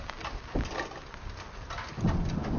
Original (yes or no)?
yes